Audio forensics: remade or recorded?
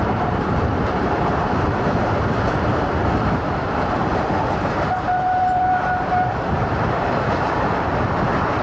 remade